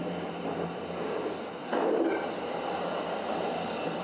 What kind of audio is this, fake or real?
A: real